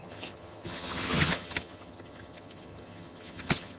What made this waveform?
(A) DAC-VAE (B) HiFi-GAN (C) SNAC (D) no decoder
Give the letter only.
B